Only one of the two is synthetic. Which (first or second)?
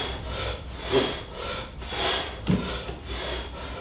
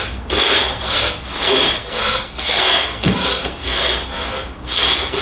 second